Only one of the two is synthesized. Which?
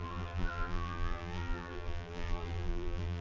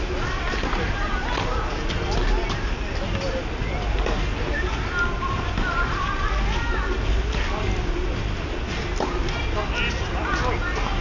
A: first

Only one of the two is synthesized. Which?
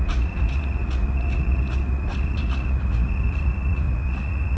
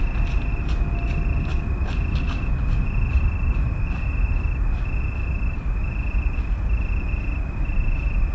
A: first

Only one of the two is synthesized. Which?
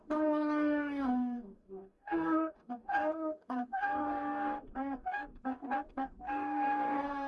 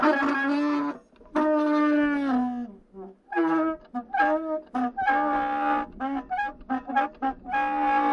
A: first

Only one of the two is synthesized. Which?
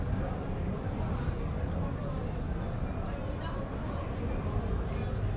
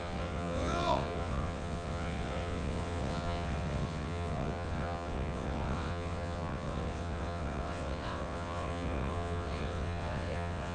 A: second